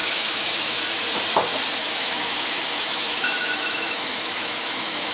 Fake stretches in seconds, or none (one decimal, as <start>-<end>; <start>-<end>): 0.0-0.8; 1.8-5.1